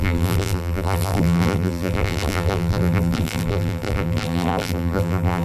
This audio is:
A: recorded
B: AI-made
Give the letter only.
B